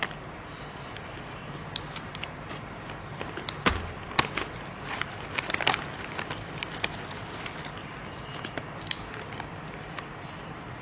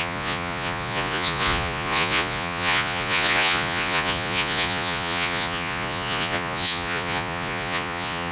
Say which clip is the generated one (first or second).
second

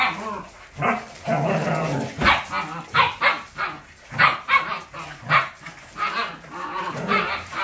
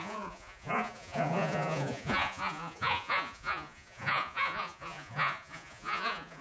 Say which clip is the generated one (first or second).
second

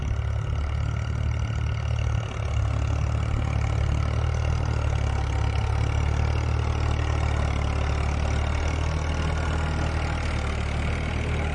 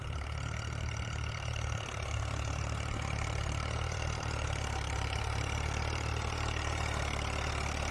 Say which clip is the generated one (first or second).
second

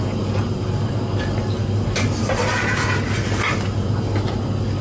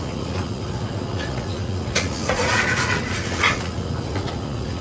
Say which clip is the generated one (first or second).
second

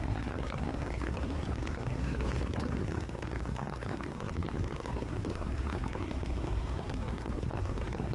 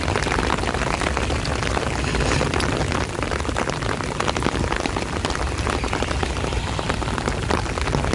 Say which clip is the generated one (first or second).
first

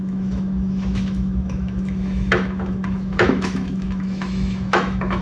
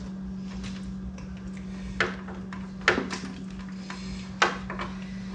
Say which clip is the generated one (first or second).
first